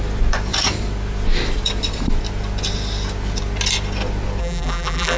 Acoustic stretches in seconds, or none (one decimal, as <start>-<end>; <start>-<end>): 0.0-4.4